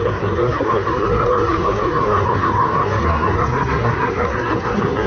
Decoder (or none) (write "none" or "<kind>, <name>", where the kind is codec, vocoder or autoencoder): codec, SNAC